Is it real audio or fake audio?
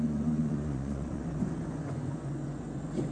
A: fake